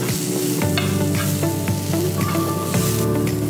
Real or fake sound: real